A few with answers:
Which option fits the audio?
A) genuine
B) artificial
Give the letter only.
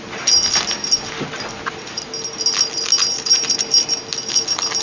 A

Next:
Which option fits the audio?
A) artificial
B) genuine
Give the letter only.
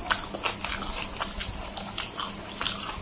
B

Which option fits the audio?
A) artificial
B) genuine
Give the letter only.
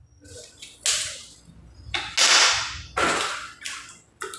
B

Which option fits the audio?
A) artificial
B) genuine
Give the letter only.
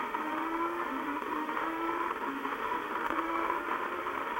A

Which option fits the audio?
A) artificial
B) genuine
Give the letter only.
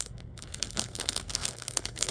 A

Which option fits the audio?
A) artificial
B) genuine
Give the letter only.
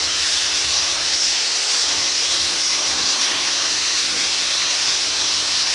A